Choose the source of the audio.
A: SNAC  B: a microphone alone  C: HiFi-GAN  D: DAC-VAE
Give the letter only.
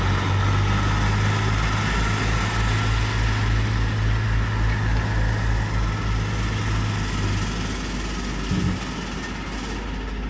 B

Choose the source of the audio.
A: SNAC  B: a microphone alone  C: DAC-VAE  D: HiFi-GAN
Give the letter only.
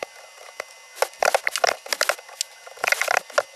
B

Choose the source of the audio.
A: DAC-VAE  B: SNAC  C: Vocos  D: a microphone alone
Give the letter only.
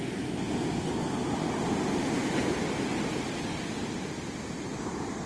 D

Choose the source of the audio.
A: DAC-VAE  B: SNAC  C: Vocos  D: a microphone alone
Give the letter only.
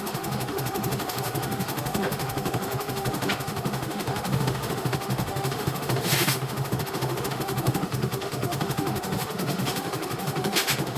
A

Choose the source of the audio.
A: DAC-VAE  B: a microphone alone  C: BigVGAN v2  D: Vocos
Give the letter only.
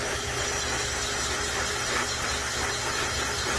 B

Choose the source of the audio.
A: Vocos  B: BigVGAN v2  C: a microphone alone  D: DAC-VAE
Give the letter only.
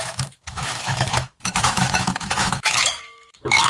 D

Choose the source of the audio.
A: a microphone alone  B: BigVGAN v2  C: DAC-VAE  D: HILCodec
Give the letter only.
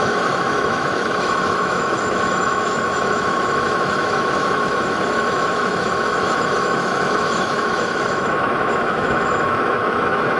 C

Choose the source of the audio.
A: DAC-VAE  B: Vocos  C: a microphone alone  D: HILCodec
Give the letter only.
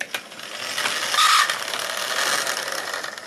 C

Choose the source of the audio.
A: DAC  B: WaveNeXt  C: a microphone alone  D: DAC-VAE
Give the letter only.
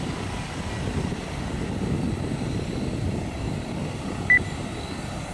C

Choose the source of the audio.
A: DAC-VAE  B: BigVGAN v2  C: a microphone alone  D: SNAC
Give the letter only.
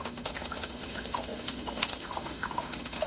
A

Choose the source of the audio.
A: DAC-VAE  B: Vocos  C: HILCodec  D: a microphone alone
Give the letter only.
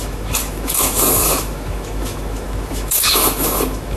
A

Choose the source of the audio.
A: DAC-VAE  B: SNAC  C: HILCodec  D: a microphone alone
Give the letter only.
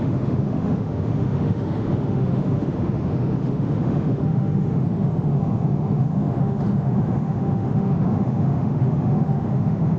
A